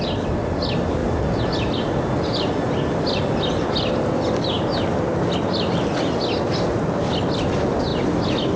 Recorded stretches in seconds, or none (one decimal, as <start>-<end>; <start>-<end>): 0.0-8.6